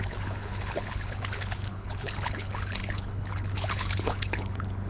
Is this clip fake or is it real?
fake